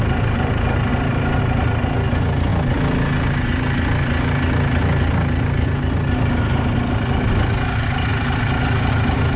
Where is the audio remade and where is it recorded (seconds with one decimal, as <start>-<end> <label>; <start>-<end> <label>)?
0.0-9.4 recorded